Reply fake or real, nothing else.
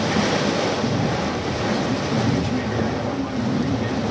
real